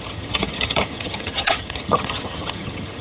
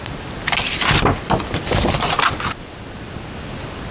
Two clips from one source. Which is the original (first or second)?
second